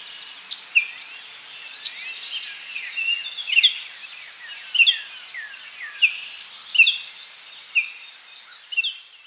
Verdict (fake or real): real